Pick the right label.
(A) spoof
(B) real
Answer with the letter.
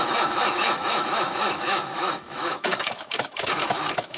A